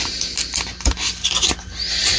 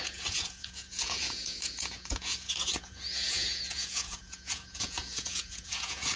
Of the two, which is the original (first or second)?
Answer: first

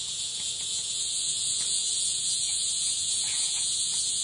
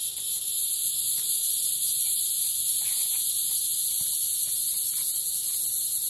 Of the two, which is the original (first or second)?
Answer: second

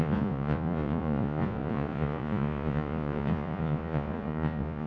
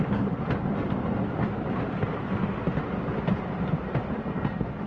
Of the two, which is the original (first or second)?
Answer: second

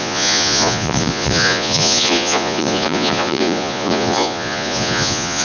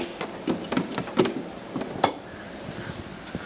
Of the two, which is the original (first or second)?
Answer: second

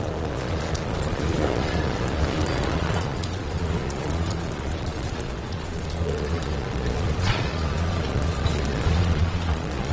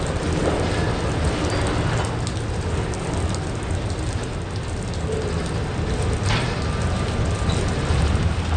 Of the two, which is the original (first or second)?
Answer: second